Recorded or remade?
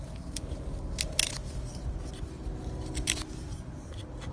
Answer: remade